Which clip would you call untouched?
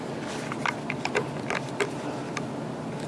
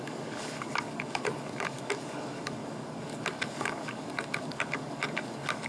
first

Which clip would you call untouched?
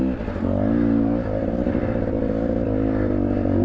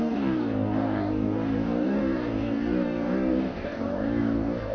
first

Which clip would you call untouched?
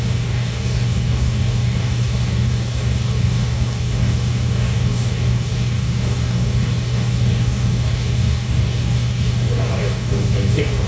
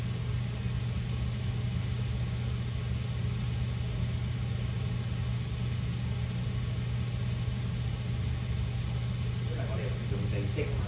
second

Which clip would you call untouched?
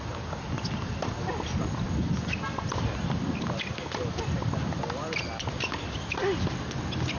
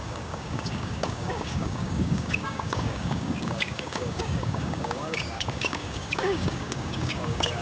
first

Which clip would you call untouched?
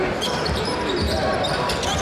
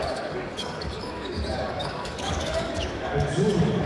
first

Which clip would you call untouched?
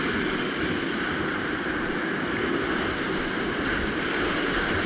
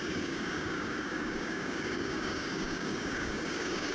first